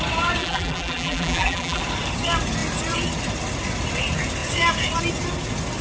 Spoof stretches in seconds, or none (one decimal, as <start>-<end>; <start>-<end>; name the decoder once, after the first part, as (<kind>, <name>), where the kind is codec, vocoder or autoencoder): 0.4-1.8 (vocoder, BigVGAN v2)